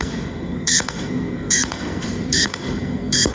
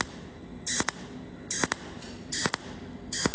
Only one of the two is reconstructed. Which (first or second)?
first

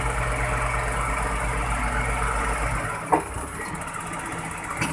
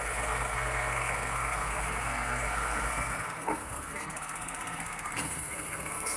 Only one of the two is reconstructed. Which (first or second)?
second